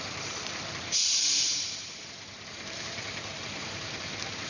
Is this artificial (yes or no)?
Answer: yes